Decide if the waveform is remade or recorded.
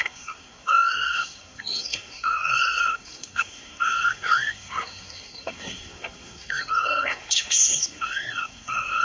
remade